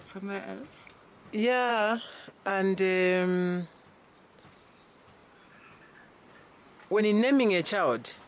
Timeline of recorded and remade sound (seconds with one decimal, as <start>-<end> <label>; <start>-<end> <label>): 0.0-1.7 recorded; 1.7-2.5 remade; 2.5-8.3 recorded